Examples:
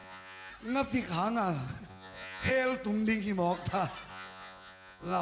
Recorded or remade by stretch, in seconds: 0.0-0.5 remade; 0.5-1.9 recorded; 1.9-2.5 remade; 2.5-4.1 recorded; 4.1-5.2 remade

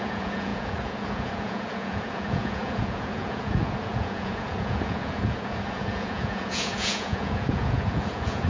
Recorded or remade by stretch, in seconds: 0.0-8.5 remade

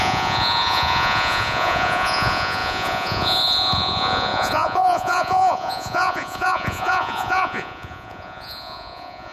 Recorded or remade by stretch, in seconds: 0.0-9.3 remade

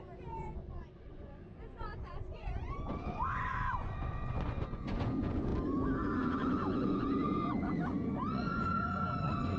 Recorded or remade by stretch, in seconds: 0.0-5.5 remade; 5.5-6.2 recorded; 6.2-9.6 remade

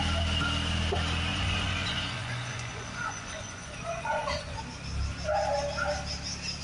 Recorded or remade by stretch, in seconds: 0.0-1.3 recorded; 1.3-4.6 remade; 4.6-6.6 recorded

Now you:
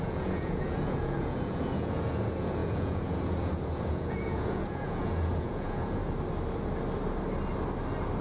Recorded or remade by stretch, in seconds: 0.0-6.0 remade; 6.0-8.2 recorded

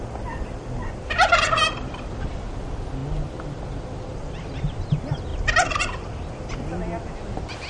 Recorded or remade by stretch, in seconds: 0.0-7.7 recorded